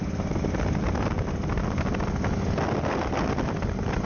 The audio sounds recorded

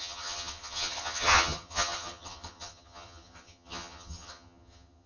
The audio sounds remade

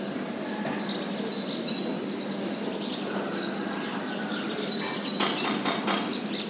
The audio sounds recorded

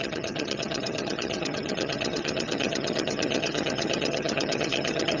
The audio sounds remade